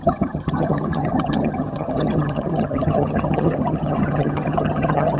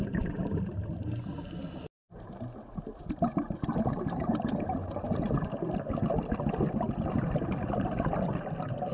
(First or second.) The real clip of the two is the second